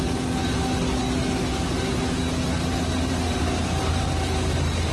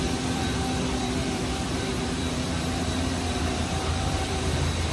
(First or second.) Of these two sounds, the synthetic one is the second